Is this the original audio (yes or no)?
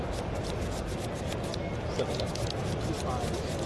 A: yes